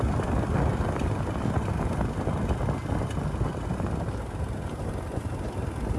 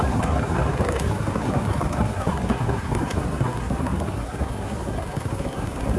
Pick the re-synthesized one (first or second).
second